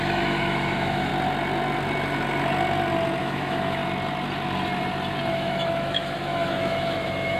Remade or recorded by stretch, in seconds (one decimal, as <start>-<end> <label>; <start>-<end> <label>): 0.0-1.1 remade; 1.1-3.2 recorded; 3.2-3.8 remade; 3.8-5.3 recorded; 5.3-7.4 remade